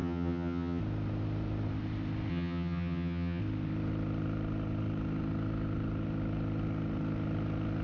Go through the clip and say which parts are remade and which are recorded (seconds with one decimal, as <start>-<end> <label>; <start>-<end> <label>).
0.0-0.8 remade; 0.8-2.3 recorded; 2.3-3.4 remade; 3.4-7.8 recorded